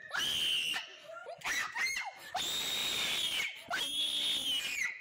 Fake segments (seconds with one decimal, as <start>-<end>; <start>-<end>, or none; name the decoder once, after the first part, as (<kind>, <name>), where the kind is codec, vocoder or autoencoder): 0.9-1.7 (vocoder, BigVGAN v2); 2.8-4.3